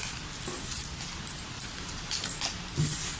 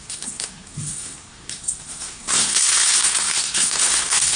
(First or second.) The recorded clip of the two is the first